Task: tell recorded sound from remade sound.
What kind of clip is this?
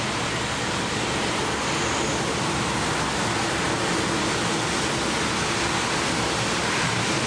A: recorded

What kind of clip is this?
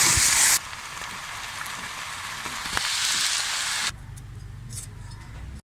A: recorded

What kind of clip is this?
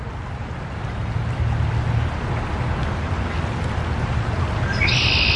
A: recorded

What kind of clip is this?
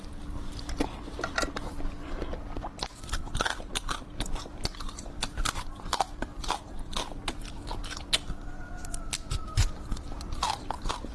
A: recorded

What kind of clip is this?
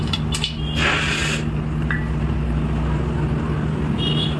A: recorded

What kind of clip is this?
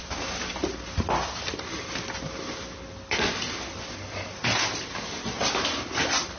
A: remade